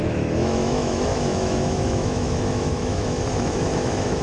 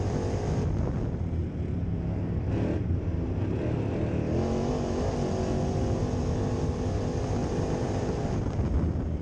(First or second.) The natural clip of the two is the second